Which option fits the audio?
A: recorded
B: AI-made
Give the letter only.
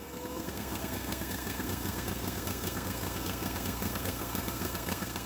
B